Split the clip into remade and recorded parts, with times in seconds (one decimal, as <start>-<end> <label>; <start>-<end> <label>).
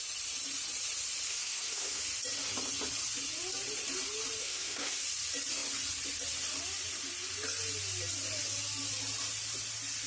0.0-1.3 recorded; 1.3-2.0 remade; 2.0-4.4 recorded; 4.4-5.0 remade; 5.0-10.1 recorded